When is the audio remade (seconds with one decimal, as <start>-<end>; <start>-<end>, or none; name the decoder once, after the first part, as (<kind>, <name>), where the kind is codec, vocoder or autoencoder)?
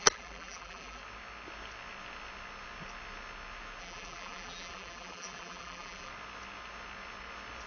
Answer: 0.0-1.0 (vocoder, BigVGAN v2); 3.8-6.1